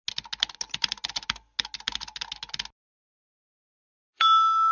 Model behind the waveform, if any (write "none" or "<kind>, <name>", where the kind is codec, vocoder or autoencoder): none